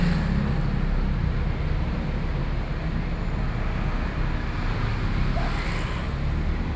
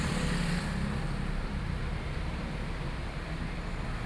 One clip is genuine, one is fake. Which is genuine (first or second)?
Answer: first